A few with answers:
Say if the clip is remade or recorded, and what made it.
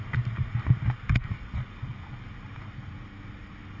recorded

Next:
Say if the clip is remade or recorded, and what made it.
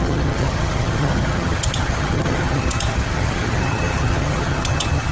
remade, vocoder, HiFi-GAN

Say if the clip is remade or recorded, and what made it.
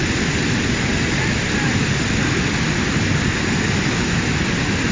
recorded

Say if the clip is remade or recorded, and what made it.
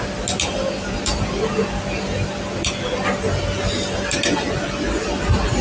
recorded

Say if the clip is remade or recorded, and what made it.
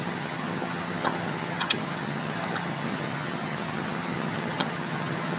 remade, vocoder, HiFi-GAN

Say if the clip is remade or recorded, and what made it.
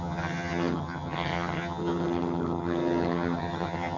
remade, vocoder, HiFi-GAN